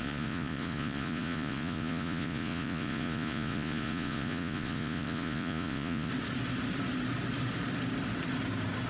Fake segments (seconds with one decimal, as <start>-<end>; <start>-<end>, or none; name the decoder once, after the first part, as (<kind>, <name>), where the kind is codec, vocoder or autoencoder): 0.0-6.1 (vocoder, Vocos)